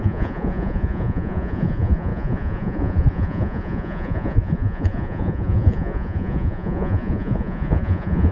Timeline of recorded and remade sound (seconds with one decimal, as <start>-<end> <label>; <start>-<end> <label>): 0.0-8.3 remade